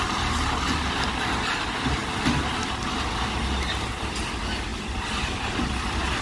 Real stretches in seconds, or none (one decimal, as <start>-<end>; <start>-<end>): 0.0-6.2